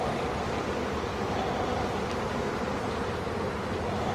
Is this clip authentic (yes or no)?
yes